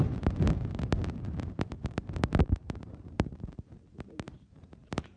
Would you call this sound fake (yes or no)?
yes